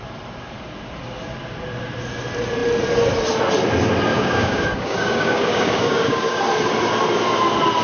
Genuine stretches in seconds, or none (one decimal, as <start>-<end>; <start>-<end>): 0.0-4.1; 6.4-7.8